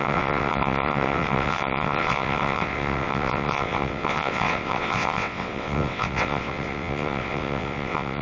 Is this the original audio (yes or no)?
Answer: no